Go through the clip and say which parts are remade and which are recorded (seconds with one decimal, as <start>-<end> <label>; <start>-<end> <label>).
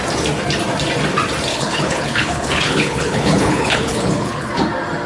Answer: 0.0-1.5 recorded; 1.5-4.5 remade; 4.5-5.1 recorded